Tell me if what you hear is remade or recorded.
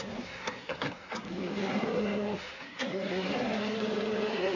remade